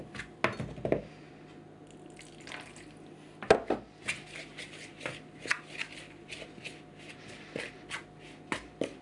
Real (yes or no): yes